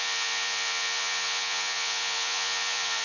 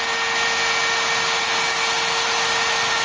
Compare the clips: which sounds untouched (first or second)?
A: second